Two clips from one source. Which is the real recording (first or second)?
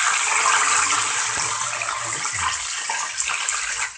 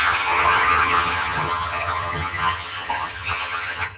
first